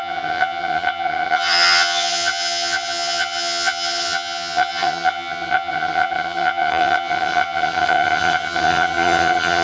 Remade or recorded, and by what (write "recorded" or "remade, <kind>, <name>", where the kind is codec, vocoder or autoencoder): remade, vocoder, HiFi-GAN